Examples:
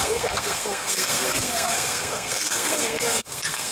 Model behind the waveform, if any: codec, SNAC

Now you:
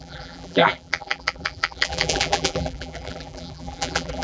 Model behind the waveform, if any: vocoder, BigVGAN v2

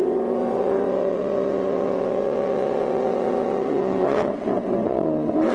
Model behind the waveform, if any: vocoder, WaveNeXt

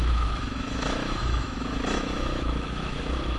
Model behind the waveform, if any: autoencoder, DAC-VAE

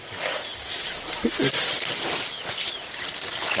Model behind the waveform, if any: none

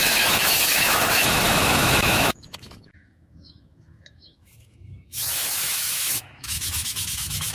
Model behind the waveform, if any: autoencoder, DAC-VAE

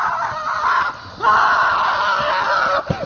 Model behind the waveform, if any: none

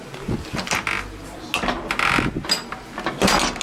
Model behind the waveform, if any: none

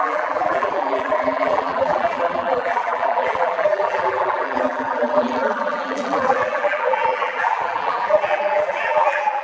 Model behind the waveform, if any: vocoder, BigVGAN v2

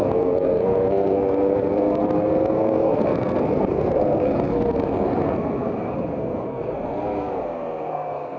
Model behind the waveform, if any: codec, SNAC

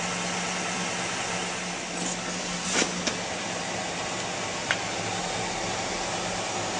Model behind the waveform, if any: none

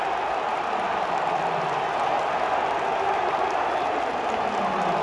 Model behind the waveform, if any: none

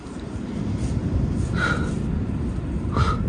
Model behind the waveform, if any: none